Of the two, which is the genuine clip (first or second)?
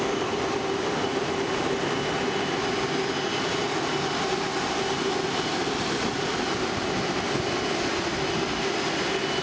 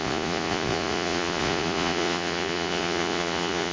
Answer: first